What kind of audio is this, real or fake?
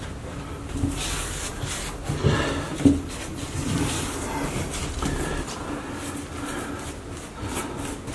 real